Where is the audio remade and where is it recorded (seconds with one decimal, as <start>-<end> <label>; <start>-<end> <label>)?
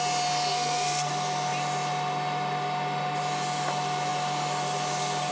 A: 0.0-0.5 recorded; 0.5-1.1 remade; 1.1-5.3 recorded